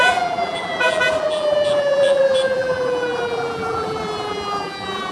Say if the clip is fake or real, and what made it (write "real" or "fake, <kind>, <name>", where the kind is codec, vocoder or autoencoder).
fake, vocoder, BigVGAN v2